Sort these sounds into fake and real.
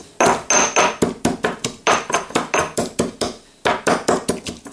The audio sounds real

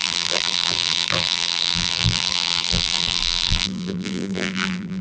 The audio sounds fake